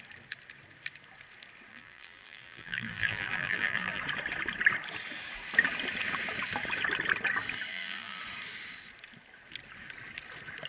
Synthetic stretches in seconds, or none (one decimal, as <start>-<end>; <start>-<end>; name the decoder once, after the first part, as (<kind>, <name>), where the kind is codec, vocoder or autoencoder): 1.7-4.0 (vocoder, BigVGAN v2); 7.7-8.2